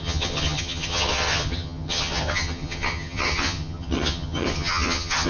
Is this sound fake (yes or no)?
yes